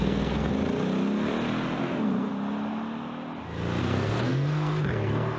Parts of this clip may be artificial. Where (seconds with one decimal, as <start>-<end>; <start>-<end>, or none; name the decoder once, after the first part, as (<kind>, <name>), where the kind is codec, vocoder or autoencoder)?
0.0-0.5 (codec, SNAC); 1.8-2.3; 3.8-5.4